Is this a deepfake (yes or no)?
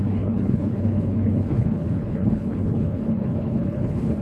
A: yes